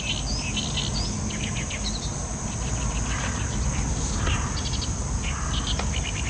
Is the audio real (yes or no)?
yes